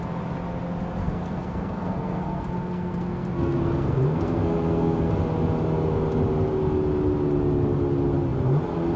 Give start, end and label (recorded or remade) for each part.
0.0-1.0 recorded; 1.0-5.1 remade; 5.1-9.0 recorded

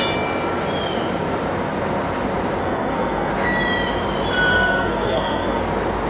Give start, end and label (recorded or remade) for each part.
0.0-2.6 recorded; 2.6-3.3 remade; 3.3-4.5 recorded; 4.5-5.6 remade; 5.6-6.1 recorded

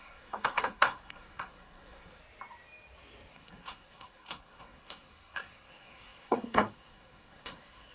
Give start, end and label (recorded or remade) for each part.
0.0-2.2 remade; 2.2-3.3 recorded; 3.3-7.9 remade

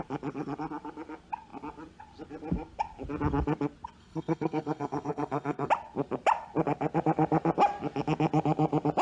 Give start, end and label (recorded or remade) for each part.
0.0-4.0 recorded; 4.0-5.7 remade; 5.7-9.0 recorded

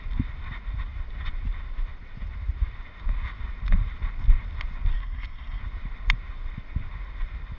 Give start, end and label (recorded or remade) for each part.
0.0-4.9 recorded; 4.9-5.6 remade; 5.6-7.6 recorded

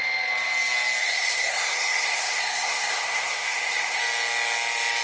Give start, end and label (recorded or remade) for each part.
0.0-1.0 recorded; 1.0-4.0 remade; 4.0-5.0 recorded

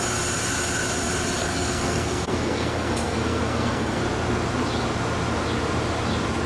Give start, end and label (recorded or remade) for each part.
0.0-1.4 recorded; 1.4-4.0 remade; 4.0-6.5 recorded